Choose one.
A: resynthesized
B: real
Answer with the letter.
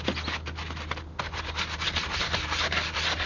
B